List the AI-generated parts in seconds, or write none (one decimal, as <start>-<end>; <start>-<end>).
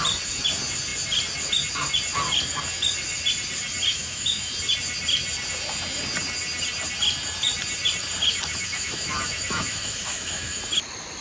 3.9-4.5; 8.3-10.6